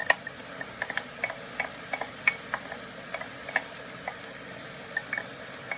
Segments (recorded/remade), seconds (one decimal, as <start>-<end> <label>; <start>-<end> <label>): 0.0-5.8 recorded